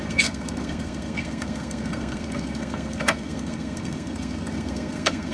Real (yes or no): no